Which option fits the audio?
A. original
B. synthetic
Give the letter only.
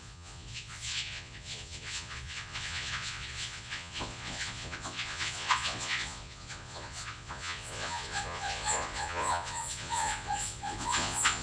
B